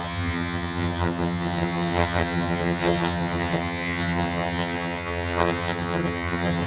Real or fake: fake